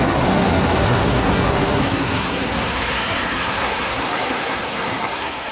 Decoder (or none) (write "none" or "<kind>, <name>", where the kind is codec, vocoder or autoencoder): codec, SNAC